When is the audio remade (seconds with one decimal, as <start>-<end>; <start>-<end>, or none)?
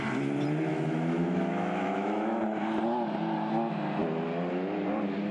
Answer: 0.7-2.4